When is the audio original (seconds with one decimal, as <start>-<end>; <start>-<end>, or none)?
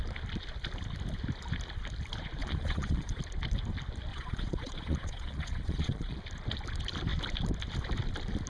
0.0-2.4; 3.2-4.1; 6.2-8.5